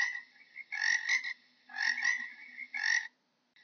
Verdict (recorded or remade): recorded